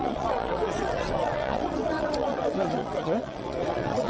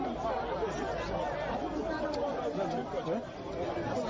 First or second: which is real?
second